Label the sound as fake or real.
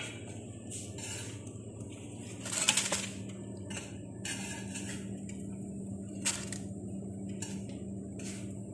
real